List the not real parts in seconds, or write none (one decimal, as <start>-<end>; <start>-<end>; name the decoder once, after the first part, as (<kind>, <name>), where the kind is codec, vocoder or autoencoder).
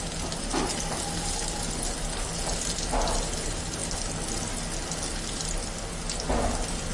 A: none